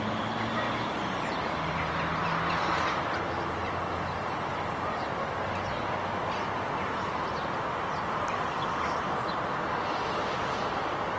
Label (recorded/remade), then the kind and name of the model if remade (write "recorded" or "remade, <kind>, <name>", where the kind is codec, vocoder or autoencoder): recorded